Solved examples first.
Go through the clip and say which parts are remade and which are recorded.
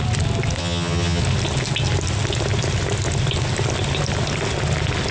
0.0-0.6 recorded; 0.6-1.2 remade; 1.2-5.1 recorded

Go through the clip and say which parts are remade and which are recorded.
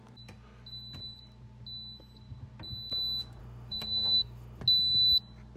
0.0-3.4 recorded; 3.4-4.6 remade; 4.6-5.6 recorded